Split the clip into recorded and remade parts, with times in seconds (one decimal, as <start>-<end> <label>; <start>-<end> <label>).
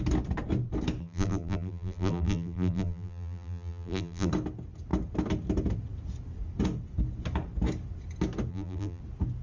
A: 0.0-1.0 recorded; 1.0-4.3 remade; 4.3-8.5 recorded; 8.5-9.0 remade; 9.0-9.4 recorded